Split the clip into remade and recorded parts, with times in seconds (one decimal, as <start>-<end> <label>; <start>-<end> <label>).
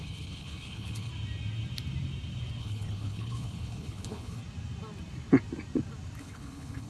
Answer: 0.0-1.1 remade; 1.1-2.6 recorded; 2.6-4.4 remade; 4.4-6.2 recorded; 6.2-6.9 remade